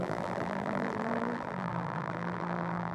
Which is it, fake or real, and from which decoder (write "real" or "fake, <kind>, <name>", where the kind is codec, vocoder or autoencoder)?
fake, vocoder, BigVGAN v2